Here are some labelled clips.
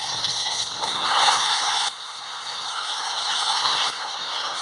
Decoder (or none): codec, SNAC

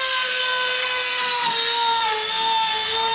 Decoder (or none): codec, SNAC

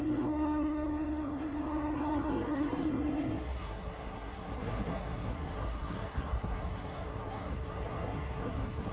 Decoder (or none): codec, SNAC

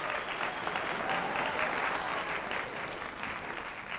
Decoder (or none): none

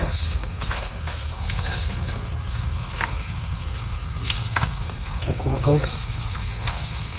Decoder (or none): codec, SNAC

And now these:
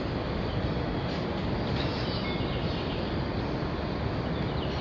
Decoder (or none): none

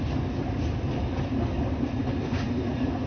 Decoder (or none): none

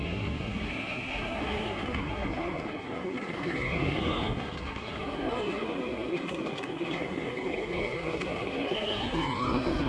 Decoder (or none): codec, SNAC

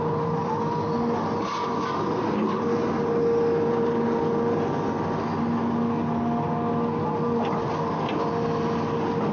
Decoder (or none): none